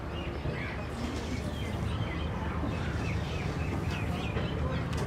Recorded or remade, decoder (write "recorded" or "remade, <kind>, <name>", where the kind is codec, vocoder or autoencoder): recorded